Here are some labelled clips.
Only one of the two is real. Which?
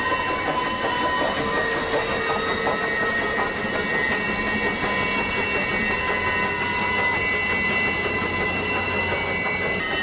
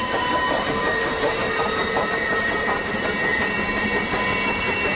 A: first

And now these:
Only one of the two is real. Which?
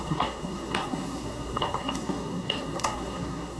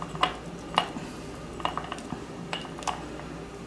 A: second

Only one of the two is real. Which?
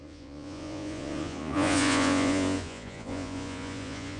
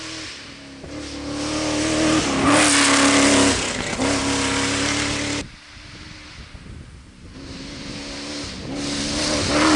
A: second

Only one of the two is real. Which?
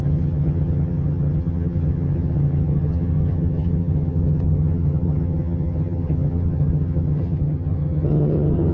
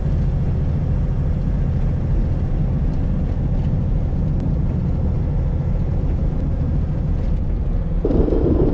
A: second